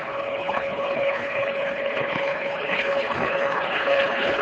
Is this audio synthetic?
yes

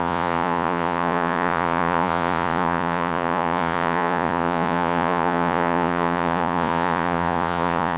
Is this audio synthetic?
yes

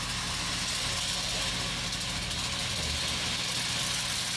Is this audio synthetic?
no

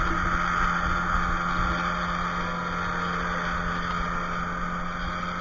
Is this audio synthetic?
no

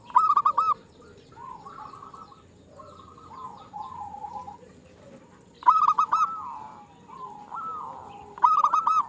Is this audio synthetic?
no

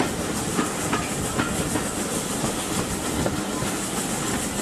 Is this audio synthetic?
no